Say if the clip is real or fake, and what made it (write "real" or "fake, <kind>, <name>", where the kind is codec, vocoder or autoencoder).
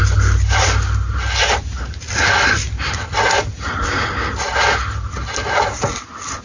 real